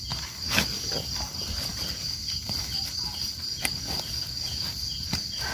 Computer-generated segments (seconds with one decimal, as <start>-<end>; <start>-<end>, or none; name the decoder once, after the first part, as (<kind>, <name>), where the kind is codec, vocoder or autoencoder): none